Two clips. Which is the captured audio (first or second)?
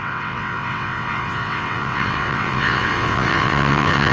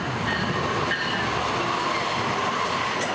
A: second